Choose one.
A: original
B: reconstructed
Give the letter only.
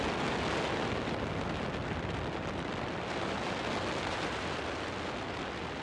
A